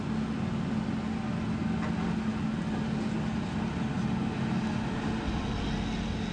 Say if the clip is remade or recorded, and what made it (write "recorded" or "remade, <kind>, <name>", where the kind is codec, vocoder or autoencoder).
recorded